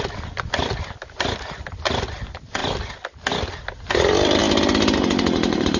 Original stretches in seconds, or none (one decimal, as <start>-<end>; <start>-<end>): 0.0-5.8